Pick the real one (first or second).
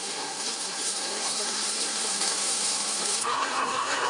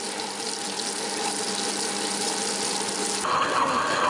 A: second